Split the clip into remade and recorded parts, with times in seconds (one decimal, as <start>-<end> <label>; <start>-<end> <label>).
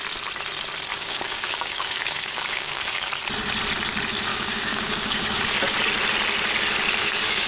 0.0-0.9 recorded; 0.9-3.1 remade; 3.1-4.3 recorded; 4.3-5.4 remade; 5.4-7.0 recorded; 7.0-7.5 remade